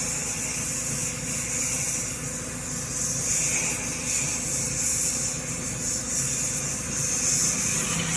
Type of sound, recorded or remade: recorded